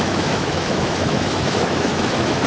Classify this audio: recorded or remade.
remade